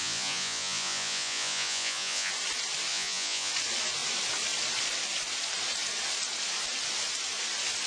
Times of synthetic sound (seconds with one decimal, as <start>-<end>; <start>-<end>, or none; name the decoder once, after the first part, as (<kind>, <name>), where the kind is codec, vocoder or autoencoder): 0.0-2.3 (vocoder, Vocos); 2.9-3.5